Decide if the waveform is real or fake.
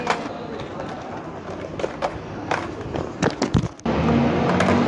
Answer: real